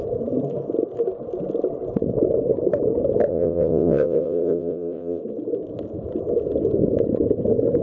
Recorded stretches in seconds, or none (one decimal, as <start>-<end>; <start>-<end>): 0.0-3.3; 5.2-7.8